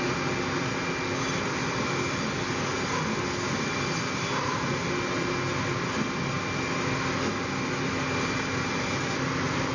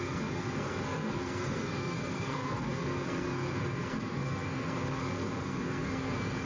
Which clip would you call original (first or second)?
first